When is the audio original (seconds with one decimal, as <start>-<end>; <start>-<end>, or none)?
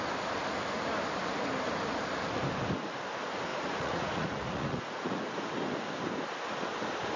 0.0-3.5; 5.2-7.2